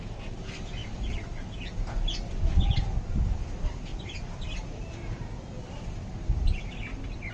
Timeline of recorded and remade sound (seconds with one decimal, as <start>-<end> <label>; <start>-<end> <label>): 0.0-3.9 recorded; 3.9-5.9 remade; 5.9-7.3 recorded

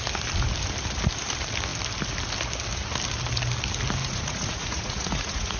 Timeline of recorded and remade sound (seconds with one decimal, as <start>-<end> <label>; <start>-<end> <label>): 0.0-4.0 recorded; 4.0-5.6 remade

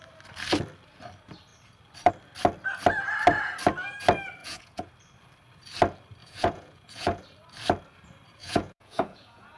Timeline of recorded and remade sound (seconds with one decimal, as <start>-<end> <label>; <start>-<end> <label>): 0.0-4.4 recorded; 4.4-4.9 remade; 4.9-6.2 recorded; 6.2-7.2 remade; 7.2-8.4 recorded; 8.4-9.6 remade

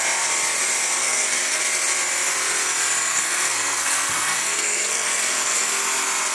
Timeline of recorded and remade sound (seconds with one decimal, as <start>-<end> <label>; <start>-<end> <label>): 0.0-1.0 recorded; 1.0-1.6 remade; 1.6-3.1 recorded; 3.1-5.7 remade; 5.7-6.3 recorded

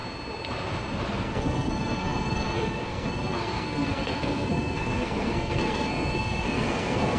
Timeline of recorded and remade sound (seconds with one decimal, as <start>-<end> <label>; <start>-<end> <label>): 0.0-1.1 recorded; 1.1-7.2 remade